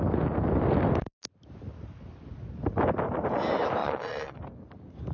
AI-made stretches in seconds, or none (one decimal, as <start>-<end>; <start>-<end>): 3.8-4.4